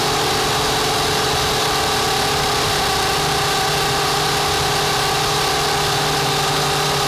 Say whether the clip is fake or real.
real